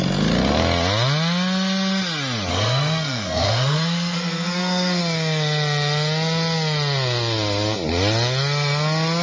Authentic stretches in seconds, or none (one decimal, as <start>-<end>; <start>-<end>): 0.0-2.5; 5.0-9.2